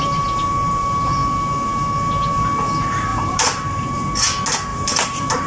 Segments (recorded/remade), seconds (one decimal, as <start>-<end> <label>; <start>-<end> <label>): 0.0-3.1 recorded; 3.1-4.1 remade; 4.1-4.7 recorded; 4.7-5.5 remade